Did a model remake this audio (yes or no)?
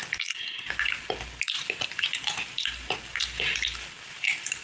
no